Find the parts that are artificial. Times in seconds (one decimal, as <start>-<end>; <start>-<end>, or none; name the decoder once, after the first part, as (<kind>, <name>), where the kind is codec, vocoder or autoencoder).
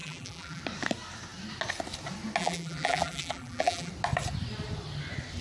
0.0-0.6 (vocoder, BigVGAN v2); 2.4-3.9